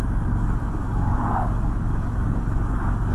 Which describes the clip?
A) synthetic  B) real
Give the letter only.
A